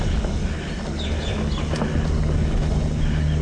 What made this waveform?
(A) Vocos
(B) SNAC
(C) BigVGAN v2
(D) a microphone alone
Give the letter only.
D